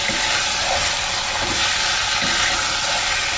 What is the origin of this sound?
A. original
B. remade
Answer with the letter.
A